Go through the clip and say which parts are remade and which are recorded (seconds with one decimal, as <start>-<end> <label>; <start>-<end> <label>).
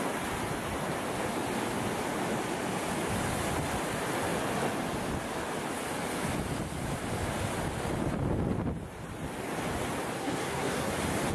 0.0-10.2 recorded; 10.2-10.9 remade; 10.9-11.3 recorded